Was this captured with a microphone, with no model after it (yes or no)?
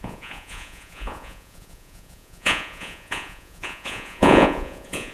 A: no